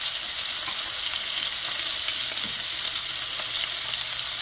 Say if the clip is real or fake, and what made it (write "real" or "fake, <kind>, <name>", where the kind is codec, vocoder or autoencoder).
real